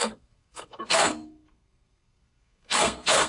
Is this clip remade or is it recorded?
remade